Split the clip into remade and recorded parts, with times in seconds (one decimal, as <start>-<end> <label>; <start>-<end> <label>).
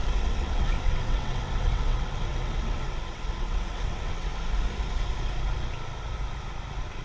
0.0-4.3 remade; 4.3-7.0 recorded